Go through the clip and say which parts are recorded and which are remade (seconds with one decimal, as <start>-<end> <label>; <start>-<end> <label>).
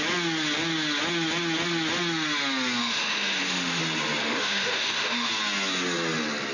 0.0-2.8 recorded; 2.8-3.8 remade; 3.8-4.2 recorded; 4.2-5.3 remade; 5.3-6.5 recorded